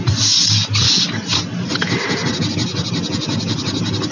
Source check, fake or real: real